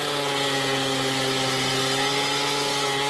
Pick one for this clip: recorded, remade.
recorded